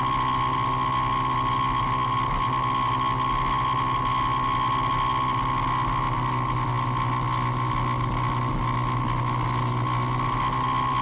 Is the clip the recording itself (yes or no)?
yes